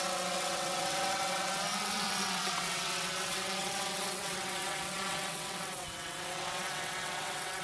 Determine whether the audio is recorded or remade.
remade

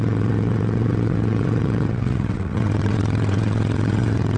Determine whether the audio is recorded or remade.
remade